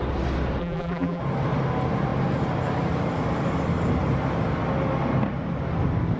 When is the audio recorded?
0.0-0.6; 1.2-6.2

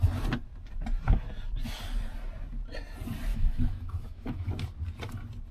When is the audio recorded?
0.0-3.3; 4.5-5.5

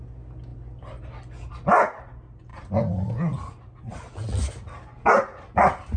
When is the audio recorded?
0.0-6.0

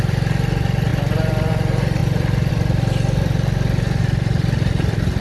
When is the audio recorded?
0.0-2.0; 2.5-5.2